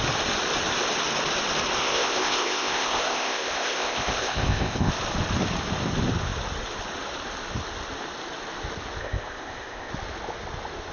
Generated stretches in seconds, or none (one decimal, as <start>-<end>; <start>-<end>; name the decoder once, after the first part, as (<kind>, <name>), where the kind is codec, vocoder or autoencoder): 1.8-4.9 (codec, ZipCodec); 9.0-9.9